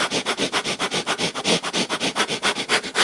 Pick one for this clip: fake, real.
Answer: real